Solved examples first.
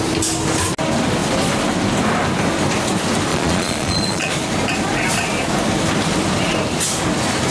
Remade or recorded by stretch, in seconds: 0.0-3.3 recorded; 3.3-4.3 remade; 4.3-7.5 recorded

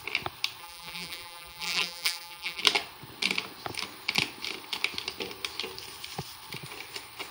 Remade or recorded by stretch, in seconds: 0.0-0.6 recorded; 0.6-2.6 remade; 2.6-7.3 recorded

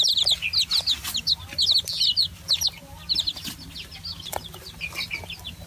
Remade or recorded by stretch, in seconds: 0.0-5.7 recorded

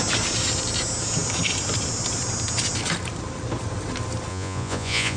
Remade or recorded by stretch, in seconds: 0.0-4.3 recorded; 4.3-5.2 remade

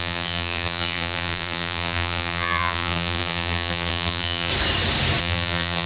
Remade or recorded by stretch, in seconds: 0.0-4.5 remade; 4.5-5.2 recorded; 5.2-5.9 remade

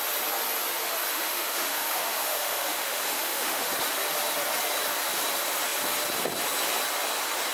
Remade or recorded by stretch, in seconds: 0.0-1.1 recorded; 1.1-3.7 remade; 3.7-7.5 recorded

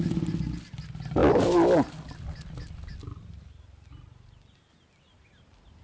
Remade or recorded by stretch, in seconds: 0.0-1.2 recorded; 1.2-4.7 remade; 4.7-5.8 recorded

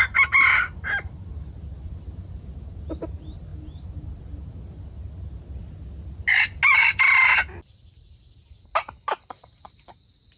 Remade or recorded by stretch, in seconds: 0.0-10.4 recorded